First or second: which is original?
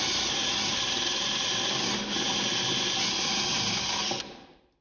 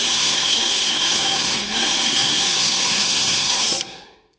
first